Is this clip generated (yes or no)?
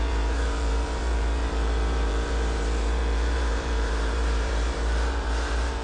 yes